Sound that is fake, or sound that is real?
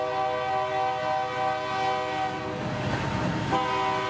real